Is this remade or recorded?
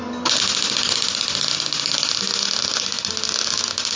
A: recorded